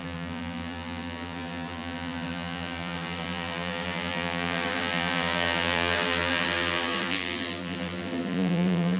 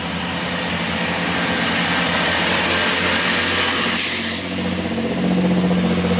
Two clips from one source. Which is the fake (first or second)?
first